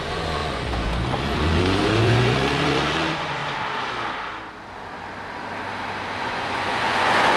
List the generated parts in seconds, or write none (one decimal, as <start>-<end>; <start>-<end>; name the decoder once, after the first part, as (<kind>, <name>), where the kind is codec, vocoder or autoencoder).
0.0-3.4 (vocoder, Vocos); 6.2-7.4